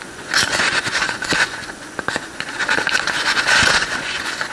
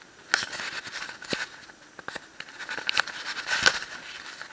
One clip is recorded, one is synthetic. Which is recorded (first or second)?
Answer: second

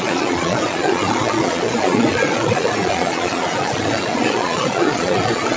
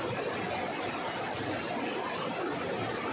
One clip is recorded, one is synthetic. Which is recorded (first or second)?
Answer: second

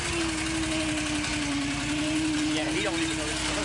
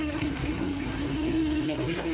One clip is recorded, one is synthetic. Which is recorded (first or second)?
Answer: first